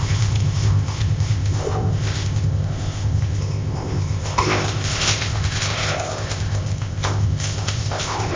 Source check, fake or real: fake